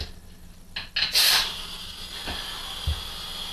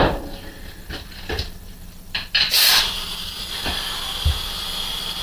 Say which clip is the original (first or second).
first